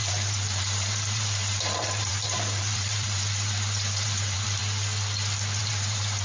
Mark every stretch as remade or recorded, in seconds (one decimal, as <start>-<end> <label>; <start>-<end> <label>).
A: 0.0-4.6 remade; 4.6-5.6 recorded; 5.6-6.2 remade